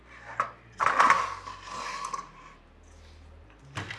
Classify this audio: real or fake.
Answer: real